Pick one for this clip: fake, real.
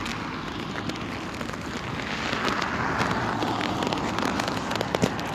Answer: real